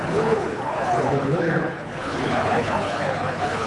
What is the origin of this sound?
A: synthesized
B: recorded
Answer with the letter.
A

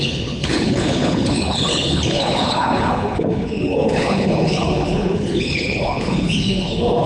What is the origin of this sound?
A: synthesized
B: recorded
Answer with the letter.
A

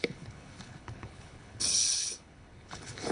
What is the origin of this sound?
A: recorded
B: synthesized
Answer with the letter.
B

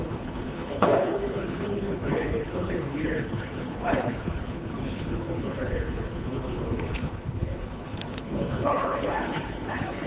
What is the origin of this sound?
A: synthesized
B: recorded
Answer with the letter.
A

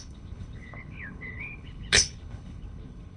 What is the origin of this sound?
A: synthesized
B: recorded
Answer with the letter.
A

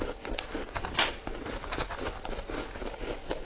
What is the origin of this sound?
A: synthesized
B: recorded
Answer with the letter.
B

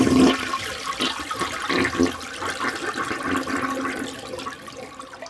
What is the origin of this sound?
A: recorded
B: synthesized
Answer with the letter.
A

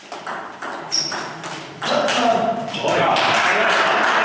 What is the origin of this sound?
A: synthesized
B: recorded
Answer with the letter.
B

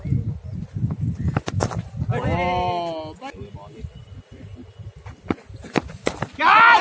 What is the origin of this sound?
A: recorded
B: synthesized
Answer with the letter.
A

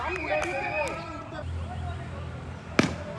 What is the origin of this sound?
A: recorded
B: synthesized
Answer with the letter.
A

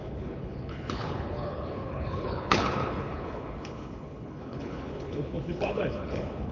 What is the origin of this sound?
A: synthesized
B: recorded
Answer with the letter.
A